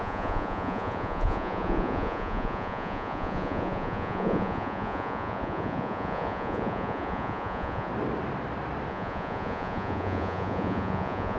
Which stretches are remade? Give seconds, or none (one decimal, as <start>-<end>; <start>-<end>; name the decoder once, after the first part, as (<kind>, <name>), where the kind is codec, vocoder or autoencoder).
0.0-7.9 (vocoder, Vocos); 8.9-11.4